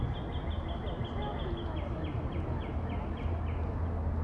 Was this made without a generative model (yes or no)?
yes